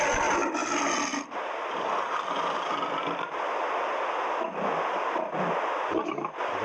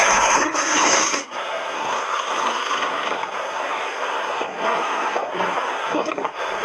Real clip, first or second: first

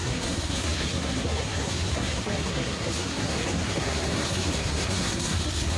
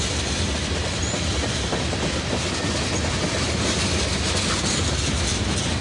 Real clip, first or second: second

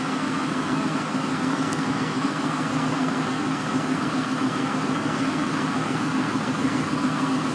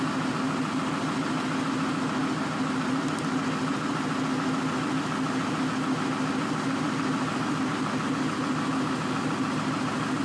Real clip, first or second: second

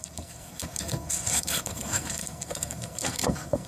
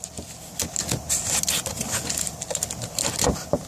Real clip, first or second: second